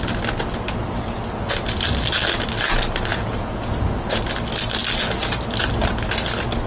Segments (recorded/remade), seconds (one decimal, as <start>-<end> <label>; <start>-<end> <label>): 0.0-3.1 recorded; 3.1-4.2 remade; 4.2-6.7 recorded

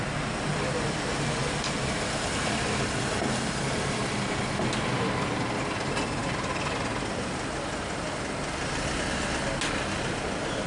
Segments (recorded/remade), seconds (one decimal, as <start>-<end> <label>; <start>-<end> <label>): 0.0-0.5 recorded; 0.5-4.4 remade; 4.4-10.7 recorded

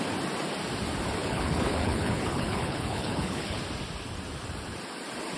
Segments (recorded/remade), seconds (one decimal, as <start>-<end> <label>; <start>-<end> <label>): 0.0-1.2 recorded; 1.2-3.6 remade; 3.6-5.4 recorded